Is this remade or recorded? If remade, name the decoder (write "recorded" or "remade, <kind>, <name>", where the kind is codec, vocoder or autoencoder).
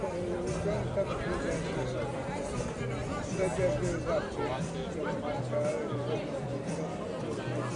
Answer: recorded